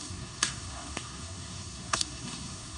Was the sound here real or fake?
fake